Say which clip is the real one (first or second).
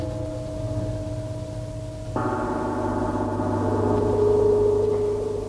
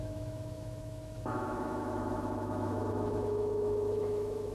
first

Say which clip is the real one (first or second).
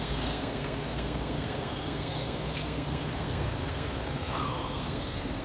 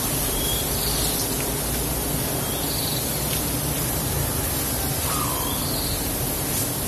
second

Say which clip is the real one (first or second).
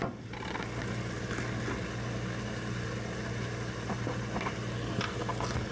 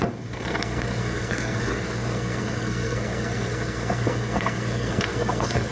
first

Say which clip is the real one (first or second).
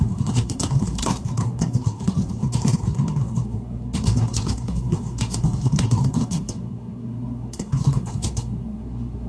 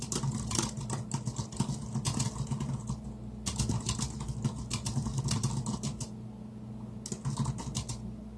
second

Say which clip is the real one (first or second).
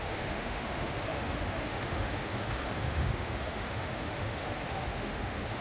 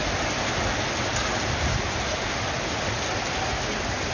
second